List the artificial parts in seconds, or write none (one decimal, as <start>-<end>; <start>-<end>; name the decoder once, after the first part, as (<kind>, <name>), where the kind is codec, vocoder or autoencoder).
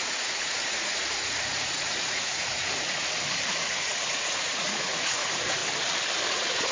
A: 0.0-3.0 (vocoder, Vocos); 3.5-5.6; 6.3-6.7